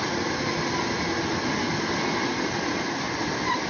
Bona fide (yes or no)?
yes